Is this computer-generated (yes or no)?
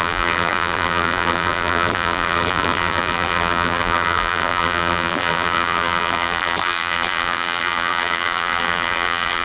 yes